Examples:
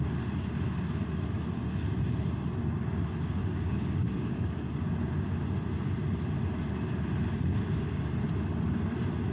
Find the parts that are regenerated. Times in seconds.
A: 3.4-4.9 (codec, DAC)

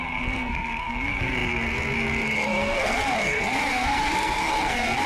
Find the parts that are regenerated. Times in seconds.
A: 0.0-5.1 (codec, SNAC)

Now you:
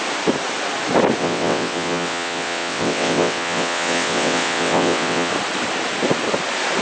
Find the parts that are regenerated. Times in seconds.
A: 1.2-5.3 (vocoder, WaveNeXt)

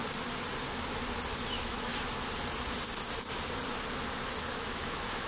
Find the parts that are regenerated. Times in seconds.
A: 1.5-1.9 (autoencoder, DAC-VAE); 4.5-5.3

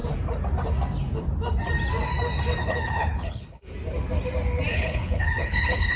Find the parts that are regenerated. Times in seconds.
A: 2.6-3.7 (codec, HILCodec); 4.7-6.0

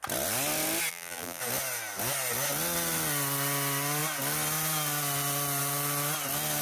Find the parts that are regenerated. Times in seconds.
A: 0.9-1.4 (vocoder, BigVGAN v2)

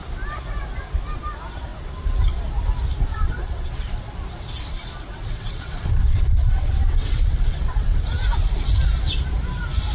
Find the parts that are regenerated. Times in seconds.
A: 3.1-4.0 (vocoder, WaveNeXt); 5.1-8.0